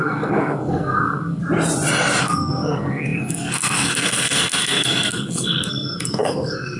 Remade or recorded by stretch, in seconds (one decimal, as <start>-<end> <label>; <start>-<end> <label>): 0.0-1.4 remade; 1.4-2.2 recorded; 2.2-6.8 remade